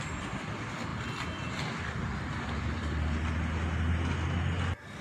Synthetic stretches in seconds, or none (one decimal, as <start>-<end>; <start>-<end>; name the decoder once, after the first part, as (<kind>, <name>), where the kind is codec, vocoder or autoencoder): none